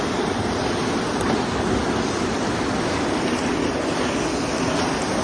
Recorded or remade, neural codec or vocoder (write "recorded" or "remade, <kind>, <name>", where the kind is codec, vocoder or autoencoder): recorded